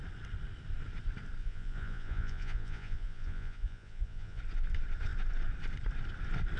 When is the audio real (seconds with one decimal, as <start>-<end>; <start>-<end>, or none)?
0.0-1.4; 4.4-6.6